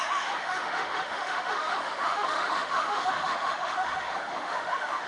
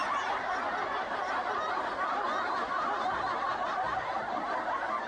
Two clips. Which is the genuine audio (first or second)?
second